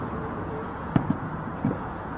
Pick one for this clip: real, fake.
fake